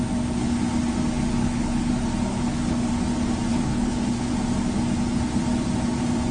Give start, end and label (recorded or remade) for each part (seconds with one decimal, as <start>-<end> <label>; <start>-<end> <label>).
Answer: 0.0-1.4 recorded; 1.4-1.9 remade; 1.9-2.3 recorded; 2.3-2.9 remade; 2.9-3.5 recorded; 3.5-4.3 remade; 4.3-6.3 recorded